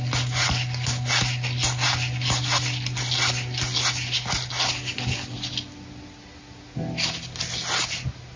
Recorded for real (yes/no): yes